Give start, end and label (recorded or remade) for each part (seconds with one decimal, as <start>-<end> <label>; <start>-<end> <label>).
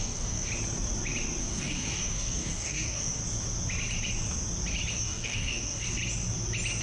0.0-0.5 remade; 0.5-1.4 recorded; 1.4-3.2 remade; 3.2-4.9 recorded; 4.9-6.0 remade; 6.0-6.8 recorded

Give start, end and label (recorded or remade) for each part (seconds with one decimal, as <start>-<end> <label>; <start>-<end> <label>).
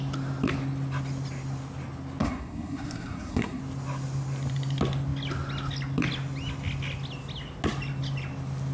0.0-2.2 recorded; 2.2-3.6 remade; 3.6-8.7 recorded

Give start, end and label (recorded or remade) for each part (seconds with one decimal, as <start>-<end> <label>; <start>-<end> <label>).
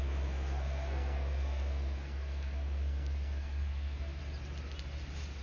0.0-4.2 remade; 4.2-5.4 recorded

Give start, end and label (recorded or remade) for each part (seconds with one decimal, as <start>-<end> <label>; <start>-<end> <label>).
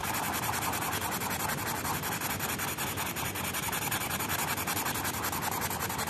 0.0-6.1 recorded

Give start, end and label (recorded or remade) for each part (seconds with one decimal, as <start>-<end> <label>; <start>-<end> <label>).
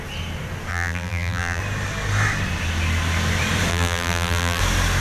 0.0-0.7 recorded; 0.7-1.6 remade; 1.6-3.7 recorded; 3.7-4.6 remade; 4.6-5.0 recorded